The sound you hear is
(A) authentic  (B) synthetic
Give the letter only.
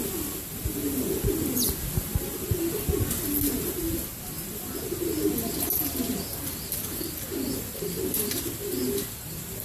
A